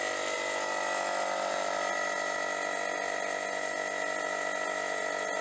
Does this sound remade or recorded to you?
recorded